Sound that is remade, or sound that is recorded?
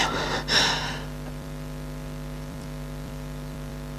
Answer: remade